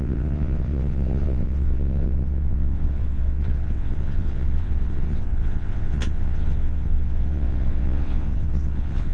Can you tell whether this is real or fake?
fake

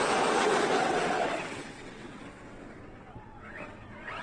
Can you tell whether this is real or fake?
fake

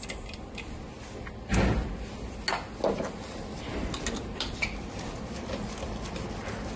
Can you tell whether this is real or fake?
real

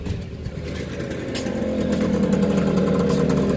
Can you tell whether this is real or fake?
real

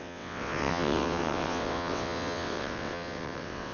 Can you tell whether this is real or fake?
fake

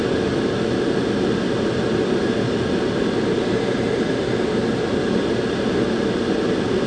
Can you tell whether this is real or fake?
real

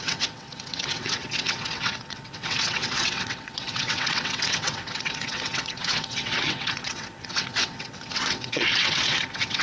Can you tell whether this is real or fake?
fake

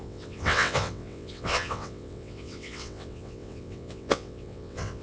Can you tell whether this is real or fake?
fake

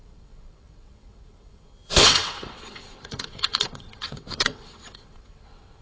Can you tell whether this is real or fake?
fake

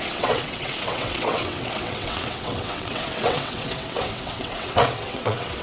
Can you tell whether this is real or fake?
fake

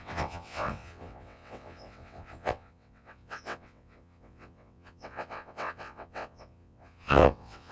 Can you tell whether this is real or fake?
fake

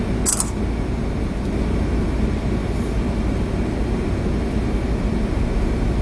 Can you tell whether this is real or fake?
real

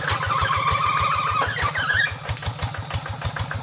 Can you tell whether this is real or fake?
real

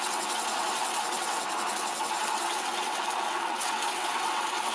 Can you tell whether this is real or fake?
fake